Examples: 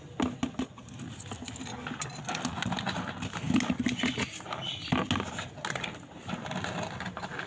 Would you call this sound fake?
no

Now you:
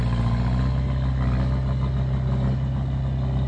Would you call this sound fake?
no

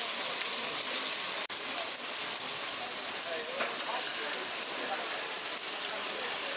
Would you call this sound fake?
no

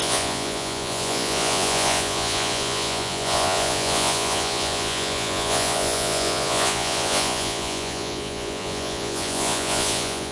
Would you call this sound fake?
yes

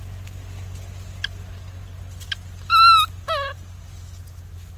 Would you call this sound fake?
no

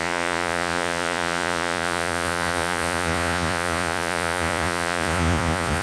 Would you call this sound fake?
yes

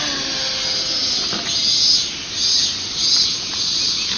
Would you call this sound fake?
no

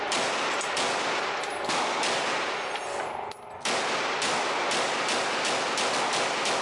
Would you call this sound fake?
no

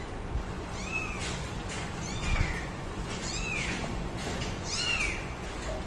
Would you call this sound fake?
yes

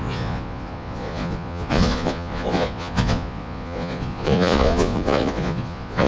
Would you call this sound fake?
yes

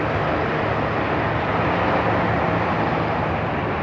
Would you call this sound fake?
no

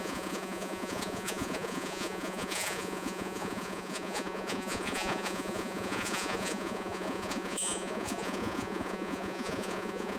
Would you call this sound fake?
yes